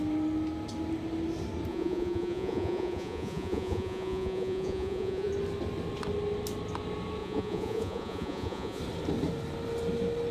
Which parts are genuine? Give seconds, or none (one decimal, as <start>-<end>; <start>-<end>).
0.0-1.7; 5.3-7.2; 8.8-10.3